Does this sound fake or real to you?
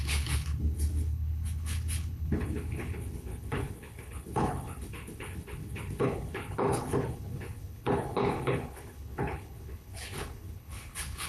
fake